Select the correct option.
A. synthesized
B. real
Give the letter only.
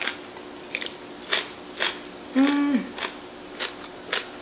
B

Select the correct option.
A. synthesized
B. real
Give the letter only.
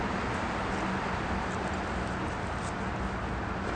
B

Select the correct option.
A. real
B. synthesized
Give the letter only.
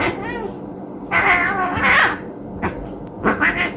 A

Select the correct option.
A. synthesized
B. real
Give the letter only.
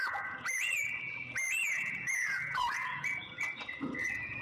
A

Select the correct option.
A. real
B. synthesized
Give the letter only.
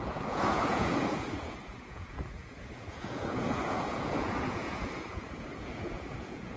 B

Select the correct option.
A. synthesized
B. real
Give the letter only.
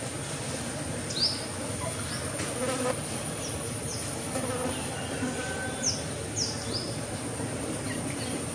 B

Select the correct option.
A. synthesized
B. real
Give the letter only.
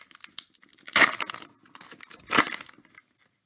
B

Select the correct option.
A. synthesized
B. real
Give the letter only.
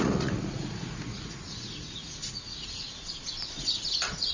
A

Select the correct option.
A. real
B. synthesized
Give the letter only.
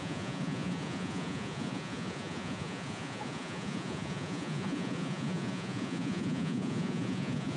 B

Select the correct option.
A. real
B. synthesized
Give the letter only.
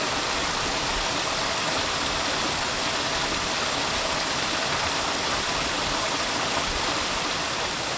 A